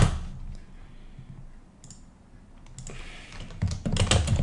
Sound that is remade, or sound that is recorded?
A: recorded